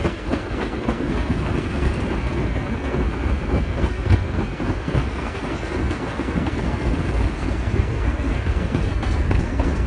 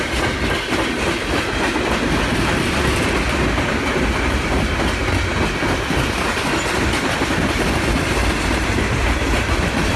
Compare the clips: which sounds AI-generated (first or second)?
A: first